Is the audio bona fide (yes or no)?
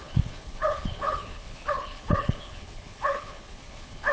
no